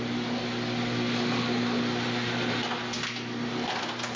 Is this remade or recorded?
recorded